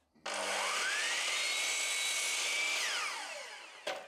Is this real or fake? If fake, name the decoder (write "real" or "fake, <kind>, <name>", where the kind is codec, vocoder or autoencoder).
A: real